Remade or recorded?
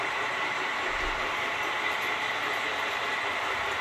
recorded